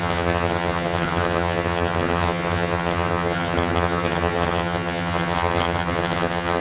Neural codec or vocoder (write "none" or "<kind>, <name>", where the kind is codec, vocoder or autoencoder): vocoder, HiFi-GAN